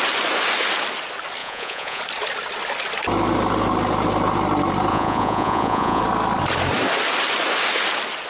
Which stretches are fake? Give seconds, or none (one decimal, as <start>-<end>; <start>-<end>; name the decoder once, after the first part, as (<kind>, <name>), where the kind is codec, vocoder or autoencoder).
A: 1.4-2.0 (vocoder, Vocos); 4.9-6.0